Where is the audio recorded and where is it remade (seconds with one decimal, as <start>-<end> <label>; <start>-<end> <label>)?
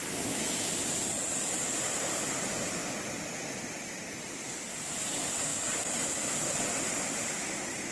0.0-0.8 remade; 0.8-1.3 recorded; 1.3-2.8 remade; 2.8-4.5 recorded; 4.5-7.9 remade